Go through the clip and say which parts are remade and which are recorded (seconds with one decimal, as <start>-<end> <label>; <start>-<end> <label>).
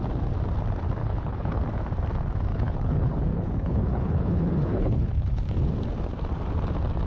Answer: 0.0-1.0 recorded; 1.0-1.6 remade; 1.6-2.5 recorded; 2.5-5.6 remade; 5.6-7.1 recorded